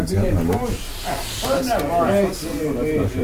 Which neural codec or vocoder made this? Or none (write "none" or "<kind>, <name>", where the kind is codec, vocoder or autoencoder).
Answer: none